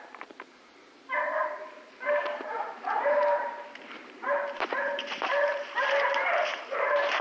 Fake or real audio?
fake